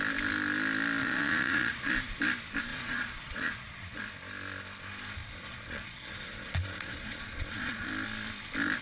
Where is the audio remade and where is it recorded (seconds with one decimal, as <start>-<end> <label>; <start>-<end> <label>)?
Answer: 0.0-1.0 recorded; 1.0-1.9 remade; 1.9-2.7 recorded; 2.7-4.0 remade; 4.0-5.2 recorded; 5.2-7.9 remade; 7.9-8.8 recorded